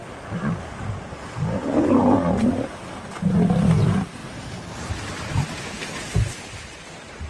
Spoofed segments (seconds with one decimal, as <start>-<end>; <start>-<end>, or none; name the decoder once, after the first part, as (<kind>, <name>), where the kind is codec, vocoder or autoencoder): none

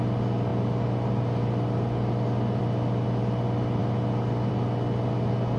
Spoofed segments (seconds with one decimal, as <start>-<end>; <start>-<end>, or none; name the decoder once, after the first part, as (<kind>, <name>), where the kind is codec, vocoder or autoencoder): none